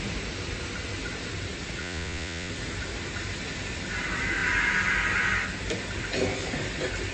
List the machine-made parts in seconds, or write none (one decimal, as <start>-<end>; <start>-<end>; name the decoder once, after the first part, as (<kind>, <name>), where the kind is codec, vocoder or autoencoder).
1.8-2.5 (vocoder, Vocos)